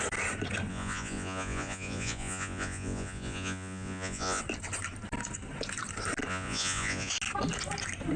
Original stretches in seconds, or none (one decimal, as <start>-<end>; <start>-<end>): 0.0-0.7; 4.4-6.3; 7.1-8.2